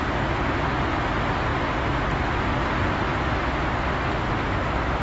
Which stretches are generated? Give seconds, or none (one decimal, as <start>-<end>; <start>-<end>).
none

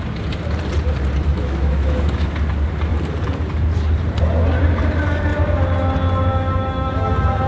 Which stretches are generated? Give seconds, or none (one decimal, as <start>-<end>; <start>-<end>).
1.3-2.3; 6.3-7.5

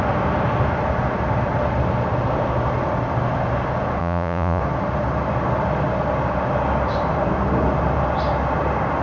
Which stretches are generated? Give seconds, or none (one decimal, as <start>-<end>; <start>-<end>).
4.0-4.6

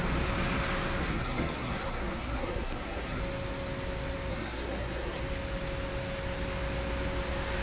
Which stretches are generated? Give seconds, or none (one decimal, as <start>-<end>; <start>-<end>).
1.0-3.2; 4.3-5.2

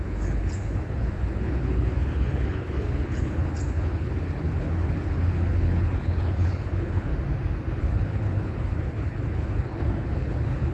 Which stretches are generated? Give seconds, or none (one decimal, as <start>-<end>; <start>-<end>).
0.0-7.1; 7.8-10.7